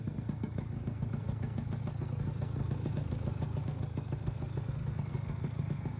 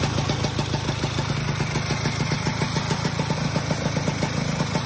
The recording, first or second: second